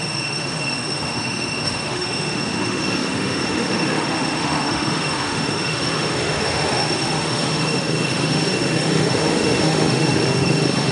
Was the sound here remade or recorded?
remade